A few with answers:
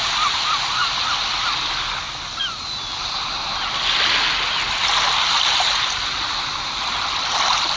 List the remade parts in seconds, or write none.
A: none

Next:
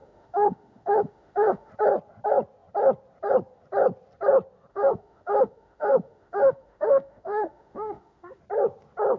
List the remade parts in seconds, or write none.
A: 0.0-1.7 (autoencoder, DAC-VAE); 4.7-8.4

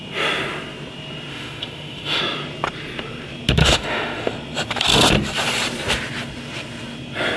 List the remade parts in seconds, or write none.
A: 1.3-2.2 (autoencoder, DAC-VAE); 3.6-4.3

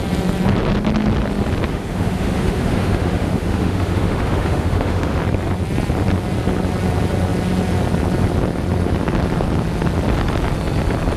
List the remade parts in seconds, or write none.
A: 1.7-5.2 (autoencoder, DAC-VAE)